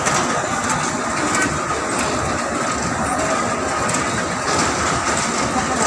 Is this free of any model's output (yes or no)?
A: yes